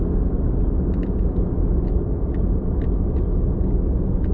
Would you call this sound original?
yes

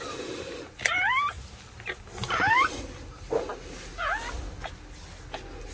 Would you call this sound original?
yes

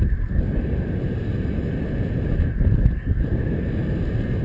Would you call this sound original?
yes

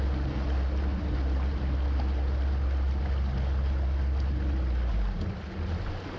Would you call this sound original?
yes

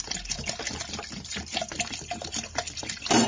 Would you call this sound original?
yes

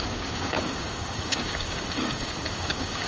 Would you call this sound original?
no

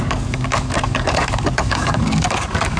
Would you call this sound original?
no